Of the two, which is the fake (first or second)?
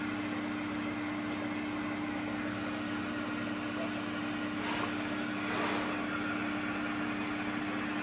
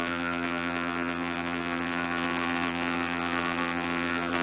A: second